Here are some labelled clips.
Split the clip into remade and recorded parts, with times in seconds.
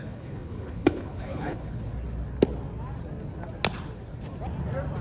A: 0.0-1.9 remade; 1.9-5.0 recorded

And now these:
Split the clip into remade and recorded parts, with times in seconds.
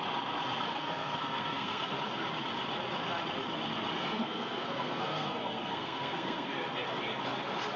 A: 0.0-0.7 recorded; 0.7-1.9 remade; 1.9-4.2 recorded; 4.2-6.5 remade; 6.5-7.8 recorded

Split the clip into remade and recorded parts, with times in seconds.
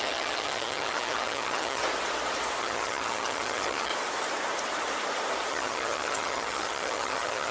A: 0.0-1.8 remade; 1.8-2.6 recorded; 2.6-3.9 remade; 3.9-5.5 recorded; 5.5-7.5 remade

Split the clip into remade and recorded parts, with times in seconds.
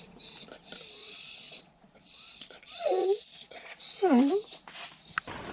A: 0.0-1.0 recorded; 1.0-4.3 remade; 4.3-5.5 recorded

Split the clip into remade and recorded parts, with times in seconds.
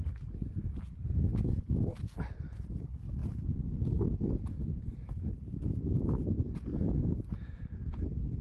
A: 0.0-8.4 recorded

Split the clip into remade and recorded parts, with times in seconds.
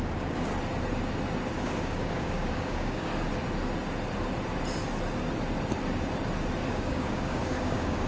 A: 0.0-0.5 remade; 0.5-1.6 recorded; 1.6-3.1 remade; 3.1-6.7 recorded; 6.7-8.1 remade